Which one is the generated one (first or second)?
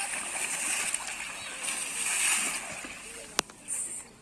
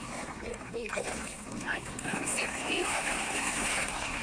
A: second